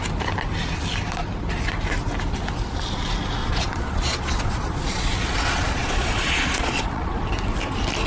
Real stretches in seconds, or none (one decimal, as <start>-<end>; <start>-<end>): 0.0-3.4; 7.2-8.1